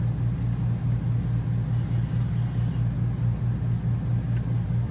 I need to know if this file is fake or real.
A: real